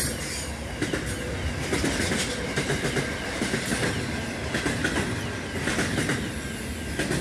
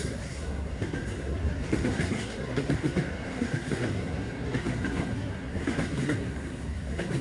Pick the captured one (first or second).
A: first